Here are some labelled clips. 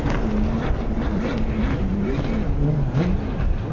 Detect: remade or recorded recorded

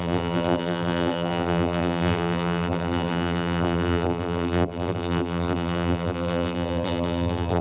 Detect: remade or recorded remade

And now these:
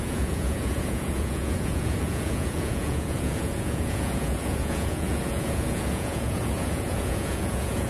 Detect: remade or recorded remade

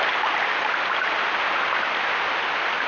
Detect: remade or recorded recorded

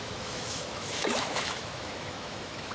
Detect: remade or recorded remade